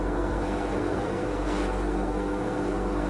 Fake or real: fake